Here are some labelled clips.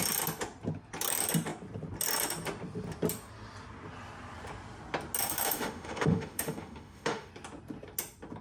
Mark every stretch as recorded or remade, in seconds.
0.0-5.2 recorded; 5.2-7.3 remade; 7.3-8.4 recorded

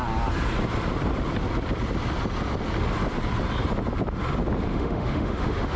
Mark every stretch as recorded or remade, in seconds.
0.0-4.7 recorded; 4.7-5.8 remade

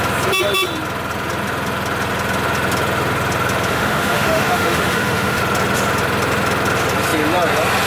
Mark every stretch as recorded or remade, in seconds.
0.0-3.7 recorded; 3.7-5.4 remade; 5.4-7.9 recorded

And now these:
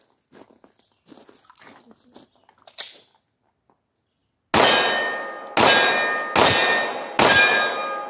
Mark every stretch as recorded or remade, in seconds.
0.0-8.1 recorded